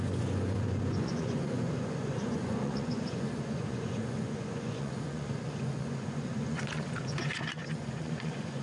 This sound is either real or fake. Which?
fake